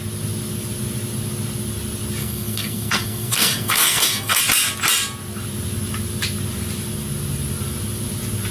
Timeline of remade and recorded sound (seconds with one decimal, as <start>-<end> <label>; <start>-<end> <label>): 0.0-2.2 recorded; 2.2-4.4 remade; 4.4-8.5 recorded